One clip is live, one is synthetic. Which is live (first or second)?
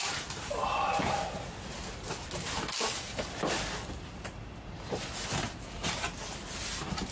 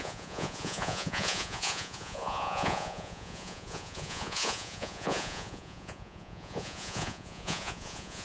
first